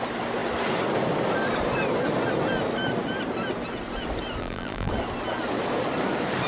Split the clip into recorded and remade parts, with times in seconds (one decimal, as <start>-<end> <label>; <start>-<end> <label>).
0.0-4.4 recorded; 4.4-4.9 remade; 4.9-6.5 recorded

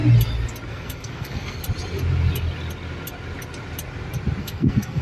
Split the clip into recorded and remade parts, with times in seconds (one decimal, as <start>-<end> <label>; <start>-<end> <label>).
0.0-0.7 recorded; 0.7-1.6 remade; 1.6-4.4 recorded; 4.4-5.0 remade

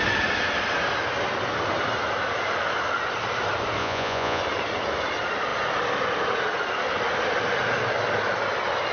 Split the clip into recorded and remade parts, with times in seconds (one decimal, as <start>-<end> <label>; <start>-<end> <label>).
0.0-3.8 recorded; 3.8-4.4 remade; 4.4-8.9 recorded